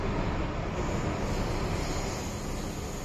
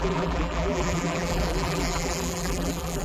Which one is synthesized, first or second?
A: second